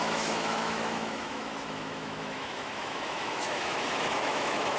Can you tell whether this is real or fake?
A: fake